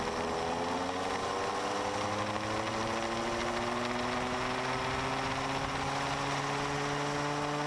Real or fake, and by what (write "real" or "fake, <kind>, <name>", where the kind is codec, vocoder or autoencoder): real